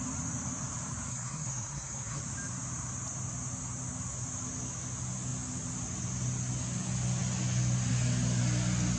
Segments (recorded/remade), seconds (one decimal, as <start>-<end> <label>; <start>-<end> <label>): 0.0-1.1 recorded; 1.1-2.2 remade; 2.2-9.0 recorded